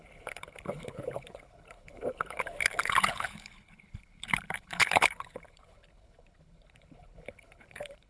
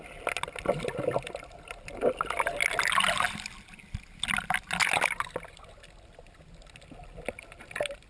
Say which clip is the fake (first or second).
first